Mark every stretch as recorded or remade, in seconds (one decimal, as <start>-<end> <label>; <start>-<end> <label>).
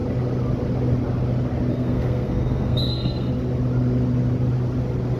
0.0-1.7 recorded; 1.7-3.3 remade; 3.3-5.2 recorded